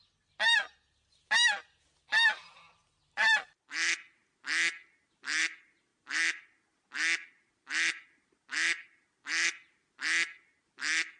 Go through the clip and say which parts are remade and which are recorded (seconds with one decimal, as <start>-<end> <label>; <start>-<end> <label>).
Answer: 0.0-11.2 recorded